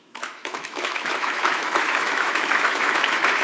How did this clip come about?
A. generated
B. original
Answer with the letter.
A